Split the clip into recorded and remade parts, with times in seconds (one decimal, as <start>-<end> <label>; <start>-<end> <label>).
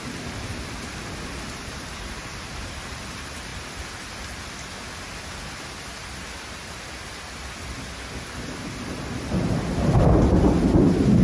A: 0.0-11.2 recorded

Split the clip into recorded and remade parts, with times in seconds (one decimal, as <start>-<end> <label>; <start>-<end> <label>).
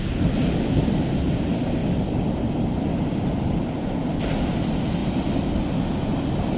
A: 0.0-6.6 recorded